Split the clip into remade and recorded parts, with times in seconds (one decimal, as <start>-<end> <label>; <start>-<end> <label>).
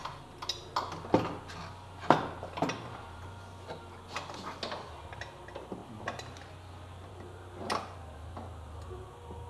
0.0-9.5 recorded